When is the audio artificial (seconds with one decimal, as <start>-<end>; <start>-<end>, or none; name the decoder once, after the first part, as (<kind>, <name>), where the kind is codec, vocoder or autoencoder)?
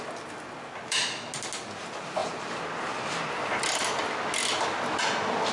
none